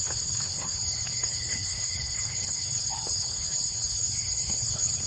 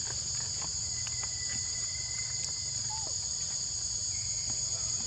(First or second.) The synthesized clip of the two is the first